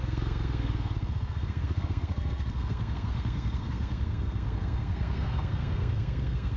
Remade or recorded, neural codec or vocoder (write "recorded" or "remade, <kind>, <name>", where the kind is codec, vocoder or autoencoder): remade, codec, SNAC